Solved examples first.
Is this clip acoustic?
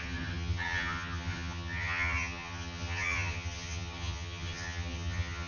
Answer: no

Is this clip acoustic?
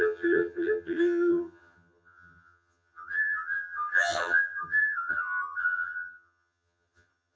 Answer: no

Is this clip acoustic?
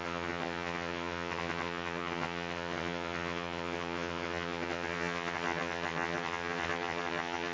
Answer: no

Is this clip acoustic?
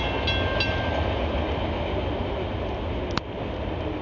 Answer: yes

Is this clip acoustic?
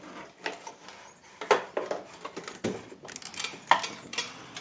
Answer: yes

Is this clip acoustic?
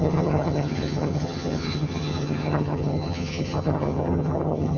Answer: no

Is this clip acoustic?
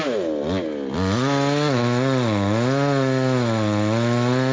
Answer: yes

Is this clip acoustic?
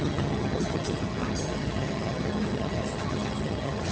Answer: no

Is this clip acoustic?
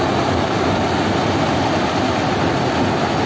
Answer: yes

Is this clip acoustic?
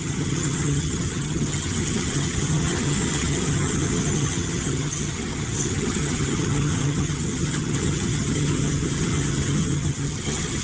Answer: no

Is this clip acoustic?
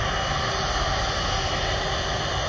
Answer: yes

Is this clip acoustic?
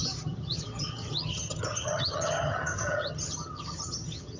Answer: no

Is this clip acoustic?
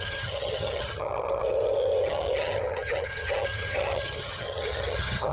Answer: no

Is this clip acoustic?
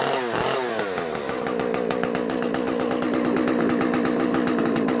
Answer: yes